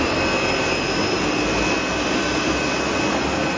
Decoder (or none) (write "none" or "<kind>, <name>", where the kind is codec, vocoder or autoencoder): none